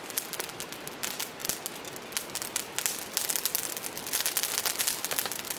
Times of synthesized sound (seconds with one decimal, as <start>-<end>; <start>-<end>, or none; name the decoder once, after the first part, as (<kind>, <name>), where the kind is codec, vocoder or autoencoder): none